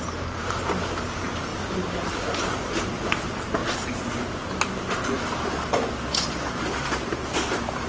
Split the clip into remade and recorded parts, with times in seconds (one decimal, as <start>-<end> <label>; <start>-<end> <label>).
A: 0.0-3.6 remade; 3.6-6.3 recorded; 6.3-7.9 remade